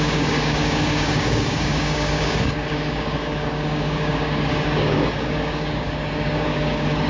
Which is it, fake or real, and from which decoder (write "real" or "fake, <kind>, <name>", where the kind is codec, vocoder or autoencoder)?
fake, codec, DAC